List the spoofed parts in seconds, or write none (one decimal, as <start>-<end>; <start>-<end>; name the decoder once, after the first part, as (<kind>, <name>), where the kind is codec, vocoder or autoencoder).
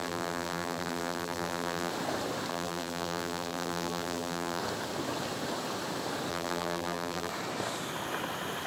0.0-1.9 (vocoder, BigVGAN v2); 2.5-4.6; 6.3-7.3